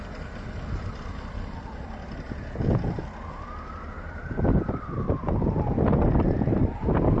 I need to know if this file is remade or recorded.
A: recorded